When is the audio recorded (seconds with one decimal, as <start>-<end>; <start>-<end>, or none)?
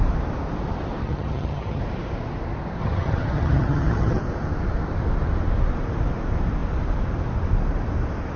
0.0-1.0; 1.8-2.8; 4.2-8.4